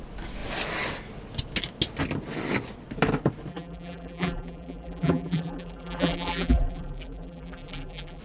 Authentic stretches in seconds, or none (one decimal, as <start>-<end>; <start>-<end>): 0.0-3.5